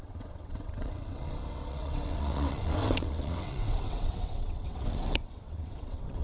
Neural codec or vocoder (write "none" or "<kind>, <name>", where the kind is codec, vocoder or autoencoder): vocoder, WaveNeXt